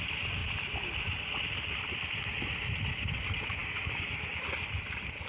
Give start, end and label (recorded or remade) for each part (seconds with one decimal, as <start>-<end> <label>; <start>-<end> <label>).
0.0-3.6 recorded; 3.6-4.4 remade; 4.4-5.3 recorded